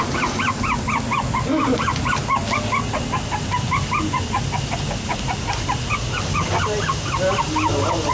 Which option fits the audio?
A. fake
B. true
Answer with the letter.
B